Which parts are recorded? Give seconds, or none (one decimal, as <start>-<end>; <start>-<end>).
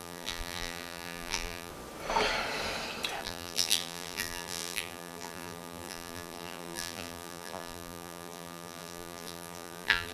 1.7-3.2